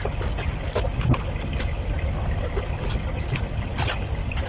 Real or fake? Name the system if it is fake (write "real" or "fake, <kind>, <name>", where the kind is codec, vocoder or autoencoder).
real